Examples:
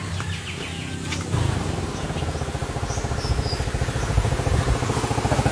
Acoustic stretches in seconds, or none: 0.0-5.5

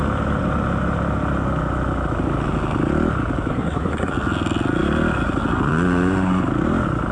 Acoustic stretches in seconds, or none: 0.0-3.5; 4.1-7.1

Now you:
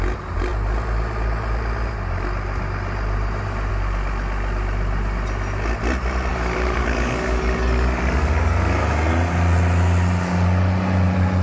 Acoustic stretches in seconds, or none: 0.0-6.3; 8.8-11.4

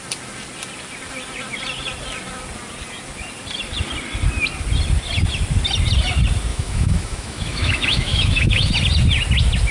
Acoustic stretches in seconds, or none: 0.0-6.5; 8.7-9.7

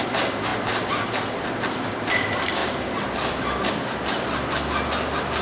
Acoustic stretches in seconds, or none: 0.0-2.6; 3.7-5.4

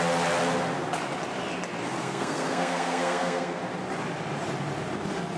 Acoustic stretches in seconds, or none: 0.0-2.0; 3.6-5.4

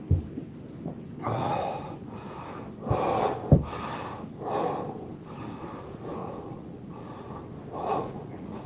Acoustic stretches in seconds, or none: 0.0-1.4; 2.4-6.2; 7.3-7.8